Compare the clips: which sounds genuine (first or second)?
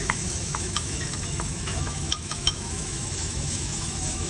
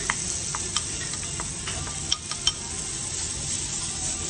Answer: second